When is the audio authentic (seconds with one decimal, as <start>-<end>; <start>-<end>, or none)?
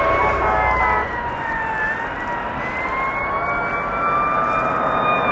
0.0-1.0; 1.7-5.3